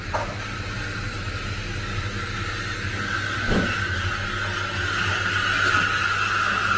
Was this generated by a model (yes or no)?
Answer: no